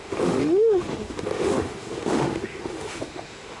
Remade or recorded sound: remade